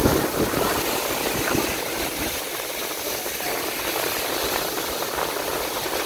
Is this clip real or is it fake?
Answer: real